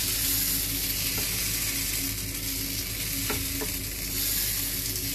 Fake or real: real